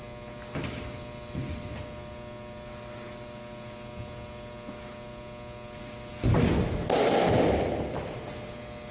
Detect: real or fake real